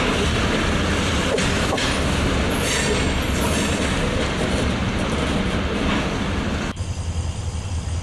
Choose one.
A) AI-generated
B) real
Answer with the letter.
B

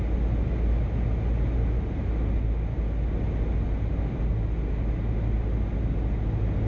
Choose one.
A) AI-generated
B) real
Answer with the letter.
B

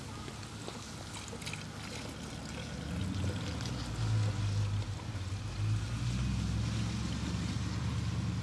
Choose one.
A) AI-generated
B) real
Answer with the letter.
B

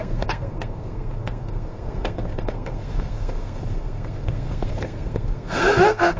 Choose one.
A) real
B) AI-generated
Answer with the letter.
B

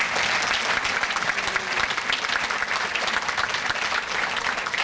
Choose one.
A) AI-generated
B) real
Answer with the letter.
B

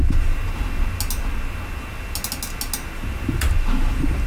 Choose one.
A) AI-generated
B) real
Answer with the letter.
B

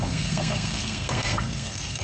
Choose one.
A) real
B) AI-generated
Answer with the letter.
B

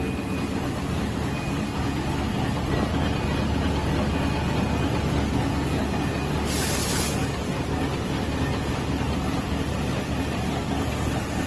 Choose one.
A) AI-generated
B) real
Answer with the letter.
B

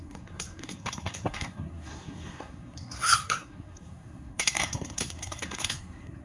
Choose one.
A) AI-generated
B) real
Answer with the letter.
A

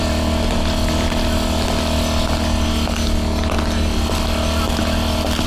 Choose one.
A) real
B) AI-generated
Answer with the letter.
A